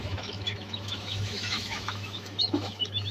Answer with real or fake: fake